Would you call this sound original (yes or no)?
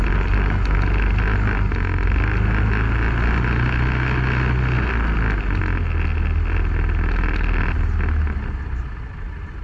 yes